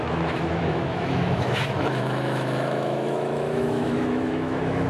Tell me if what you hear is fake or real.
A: fake